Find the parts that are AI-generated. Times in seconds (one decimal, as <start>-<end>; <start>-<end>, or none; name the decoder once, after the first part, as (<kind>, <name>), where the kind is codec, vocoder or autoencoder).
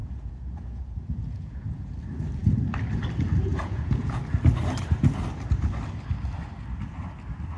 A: 0.0-1.9 (vocoder, Vocos); 3.5-4.2